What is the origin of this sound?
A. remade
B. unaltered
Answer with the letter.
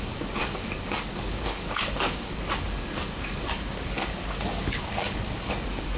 A